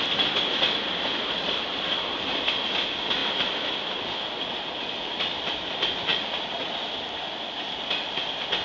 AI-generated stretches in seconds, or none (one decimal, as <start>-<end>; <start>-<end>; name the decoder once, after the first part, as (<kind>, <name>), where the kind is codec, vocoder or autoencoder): 6.1-6.7 (vocoder, Vocos)